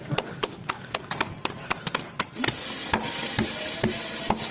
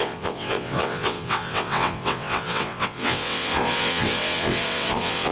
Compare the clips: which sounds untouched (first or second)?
first